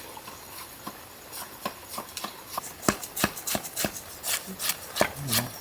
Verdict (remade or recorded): recorded